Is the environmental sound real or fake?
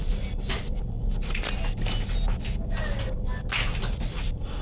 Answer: real